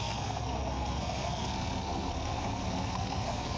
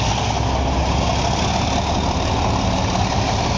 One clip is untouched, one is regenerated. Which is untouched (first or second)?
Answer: second